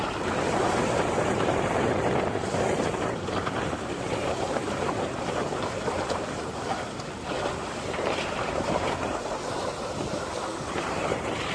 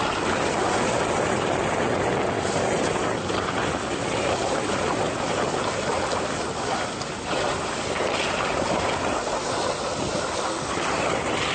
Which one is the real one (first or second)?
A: second